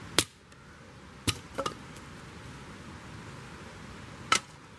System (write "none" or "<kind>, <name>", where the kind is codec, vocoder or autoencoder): none